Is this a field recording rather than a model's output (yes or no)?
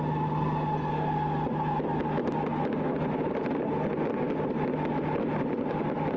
yes